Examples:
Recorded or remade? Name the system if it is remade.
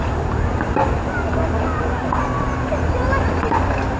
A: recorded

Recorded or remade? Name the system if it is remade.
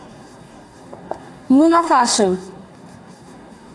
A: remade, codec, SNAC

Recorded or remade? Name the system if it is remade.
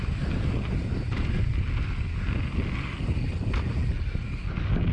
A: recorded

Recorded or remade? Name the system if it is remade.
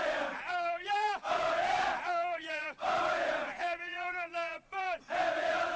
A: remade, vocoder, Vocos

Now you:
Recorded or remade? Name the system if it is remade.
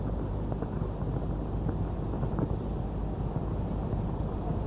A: recorded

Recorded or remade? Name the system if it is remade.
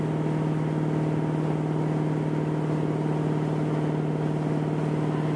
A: recorded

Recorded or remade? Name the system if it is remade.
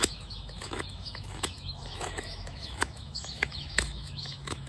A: remade, autoencoder, DAC-VAE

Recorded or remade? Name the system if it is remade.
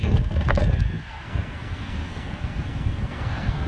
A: remade, codec, SNAC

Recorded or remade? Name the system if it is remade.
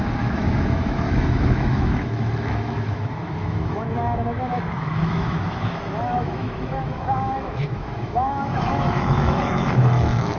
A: remade, autoencoder, DAC-VAE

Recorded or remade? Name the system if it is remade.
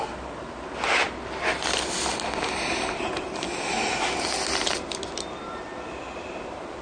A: recorded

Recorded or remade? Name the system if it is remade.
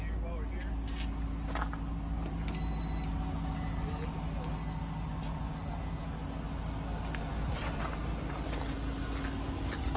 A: recorded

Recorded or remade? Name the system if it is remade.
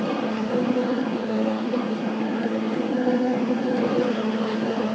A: remade, codec, SNAC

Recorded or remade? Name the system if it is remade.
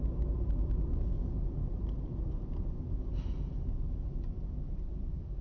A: recorded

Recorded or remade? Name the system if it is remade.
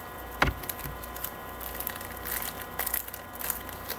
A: recorded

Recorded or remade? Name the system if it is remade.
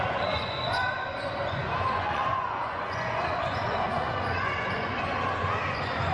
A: remade, vocoder, Vocos